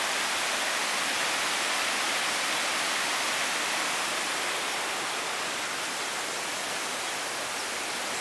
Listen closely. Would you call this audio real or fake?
real